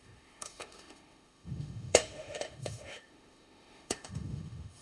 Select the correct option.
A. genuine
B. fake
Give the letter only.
B